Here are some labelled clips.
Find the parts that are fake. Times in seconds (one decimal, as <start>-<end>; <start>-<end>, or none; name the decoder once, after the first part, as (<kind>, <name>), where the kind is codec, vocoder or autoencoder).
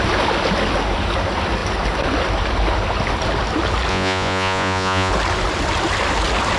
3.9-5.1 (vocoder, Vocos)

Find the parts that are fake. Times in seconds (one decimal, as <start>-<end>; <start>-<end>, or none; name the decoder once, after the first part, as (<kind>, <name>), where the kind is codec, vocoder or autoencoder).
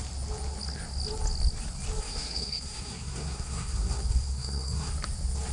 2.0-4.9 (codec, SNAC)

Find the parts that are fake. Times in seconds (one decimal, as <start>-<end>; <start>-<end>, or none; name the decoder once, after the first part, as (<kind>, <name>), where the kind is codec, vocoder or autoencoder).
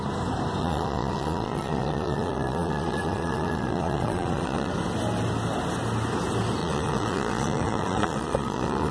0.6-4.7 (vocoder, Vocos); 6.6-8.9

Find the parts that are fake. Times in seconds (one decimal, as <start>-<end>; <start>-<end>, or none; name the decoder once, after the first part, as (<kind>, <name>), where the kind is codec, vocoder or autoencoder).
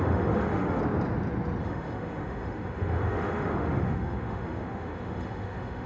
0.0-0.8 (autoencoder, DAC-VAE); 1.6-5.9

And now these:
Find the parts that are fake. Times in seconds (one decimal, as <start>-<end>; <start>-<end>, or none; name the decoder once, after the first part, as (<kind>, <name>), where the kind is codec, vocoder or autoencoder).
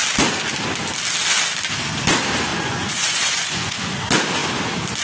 2.5-3.9 (vocoder, Vocos)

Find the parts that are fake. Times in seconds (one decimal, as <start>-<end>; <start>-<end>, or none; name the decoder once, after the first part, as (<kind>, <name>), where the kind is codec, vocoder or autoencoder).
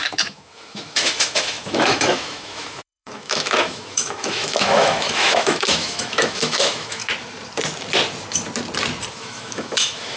0.0-7.0 (autoencoder, DAC-VAE); 9.1-10.2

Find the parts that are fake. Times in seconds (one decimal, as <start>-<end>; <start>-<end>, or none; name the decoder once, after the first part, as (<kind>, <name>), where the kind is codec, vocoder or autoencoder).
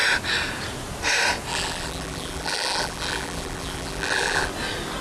1.5-4.5 (vocoder, BigVGAN v2)